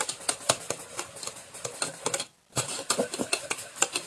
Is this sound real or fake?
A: real